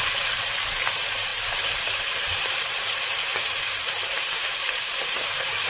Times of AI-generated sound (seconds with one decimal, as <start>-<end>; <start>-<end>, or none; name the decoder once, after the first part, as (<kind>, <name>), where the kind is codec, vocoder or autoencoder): 0.0-5.7 (vocoder, BigVGAN v2)